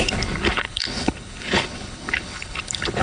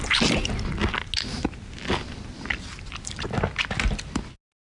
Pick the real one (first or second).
second